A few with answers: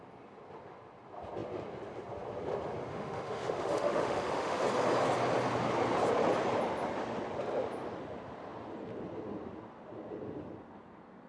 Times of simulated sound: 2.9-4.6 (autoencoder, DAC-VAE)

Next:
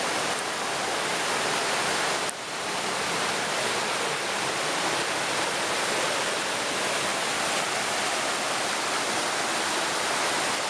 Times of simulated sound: none

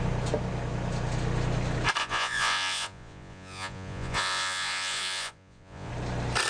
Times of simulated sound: 2.0-5.9 (vocoder, Vocos)

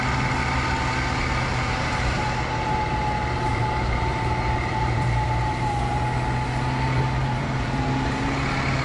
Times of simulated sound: 1.5-2.2 (vocoder, BigVGAN v2); 3.5-5.7; 7.2-8.2